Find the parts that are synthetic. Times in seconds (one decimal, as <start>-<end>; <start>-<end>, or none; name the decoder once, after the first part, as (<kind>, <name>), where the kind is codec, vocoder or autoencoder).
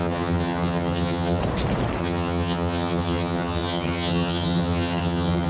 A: 0.0-1.4 (vocoder, HiFi-GAN); 2.0-5.5